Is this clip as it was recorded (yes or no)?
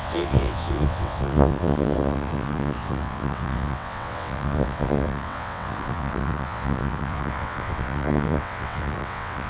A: no